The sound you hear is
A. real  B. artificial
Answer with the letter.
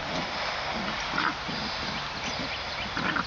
A